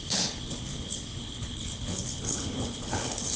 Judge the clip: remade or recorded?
remade